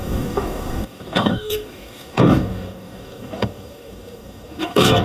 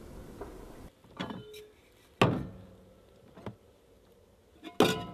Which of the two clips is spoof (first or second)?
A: first